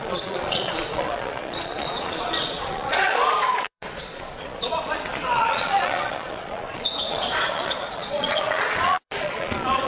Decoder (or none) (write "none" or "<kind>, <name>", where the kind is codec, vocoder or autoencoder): vocoder, Vocos